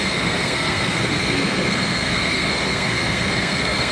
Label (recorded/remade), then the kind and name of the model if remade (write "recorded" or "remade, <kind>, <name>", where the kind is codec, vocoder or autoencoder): remade, codec, SNAC